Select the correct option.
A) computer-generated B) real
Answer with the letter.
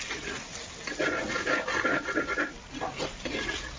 B